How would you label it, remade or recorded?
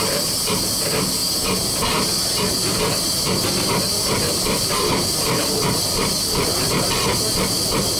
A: recorded